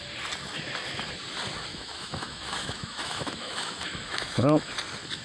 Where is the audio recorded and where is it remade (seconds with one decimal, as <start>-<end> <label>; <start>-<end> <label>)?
0.0-1.7 recorded; 1.7-4.7 remade; 4.7-5.2 recorded